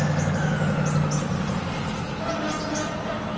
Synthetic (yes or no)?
no